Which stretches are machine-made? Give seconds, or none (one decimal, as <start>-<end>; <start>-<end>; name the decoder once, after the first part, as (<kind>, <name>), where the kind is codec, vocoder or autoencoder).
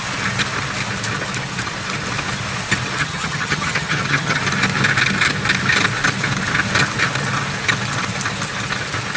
3.0-4.4 (vocoder, HiFi-GAN)